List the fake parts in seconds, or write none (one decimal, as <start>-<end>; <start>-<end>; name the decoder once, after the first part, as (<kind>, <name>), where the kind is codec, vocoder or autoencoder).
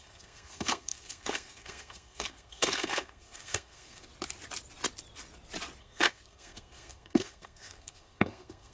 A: 0.0-4.1 (codec, SNAC); 5.8-8.7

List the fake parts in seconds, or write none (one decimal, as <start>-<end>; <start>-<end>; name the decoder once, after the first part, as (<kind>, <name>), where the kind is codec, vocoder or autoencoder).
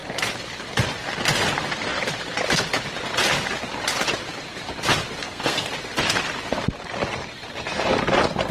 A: 5.2-5.7 (codec, SNAC)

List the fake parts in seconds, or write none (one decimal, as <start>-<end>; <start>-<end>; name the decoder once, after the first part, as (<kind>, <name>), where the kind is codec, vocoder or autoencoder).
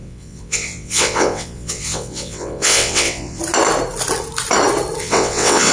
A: 0.0-3.4 (vocoder, WaveNeXt); 5.0-5.7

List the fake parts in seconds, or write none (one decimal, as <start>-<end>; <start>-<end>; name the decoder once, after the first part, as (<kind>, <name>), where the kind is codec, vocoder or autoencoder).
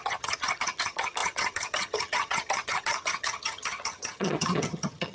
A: 0.0-5.1 (vocoder, HiFi-GAN)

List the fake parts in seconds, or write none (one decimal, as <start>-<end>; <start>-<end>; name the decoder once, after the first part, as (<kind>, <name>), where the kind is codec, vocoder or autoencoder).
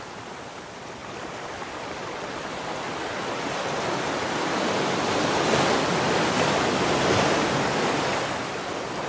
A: 1.0-2.6 (vocoder, BigVGAN v2)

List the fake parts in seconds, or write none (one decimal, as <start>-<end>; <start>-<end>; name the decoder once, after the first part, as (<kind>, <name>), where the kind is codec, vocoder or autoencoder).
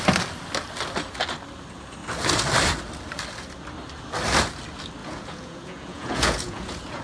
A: 5.0-7.0 (vocoder, Vocos)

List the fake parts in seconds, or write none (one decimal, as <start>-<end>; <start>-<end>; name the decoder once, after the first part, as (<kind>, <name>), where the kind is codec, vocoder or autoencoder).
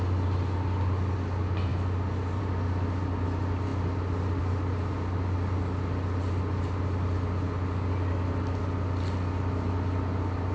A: none